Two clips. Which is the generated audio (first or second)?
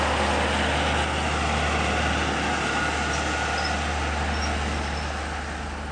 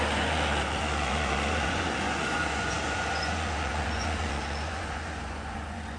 second